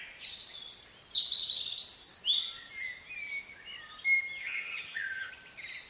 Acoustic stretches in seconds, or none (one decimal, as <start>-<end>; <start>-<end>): 0.0-4.4; 5.3-5.9